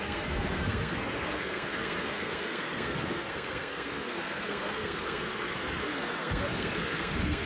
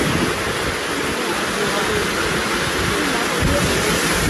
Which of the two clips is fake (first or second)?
first